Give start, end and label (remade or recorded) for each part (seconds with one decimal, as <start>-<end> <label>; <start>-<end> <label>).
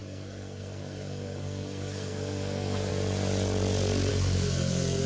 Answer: 0.0-2.9 remade; 2.9-4.1 recorded; 4.1-5.1 remade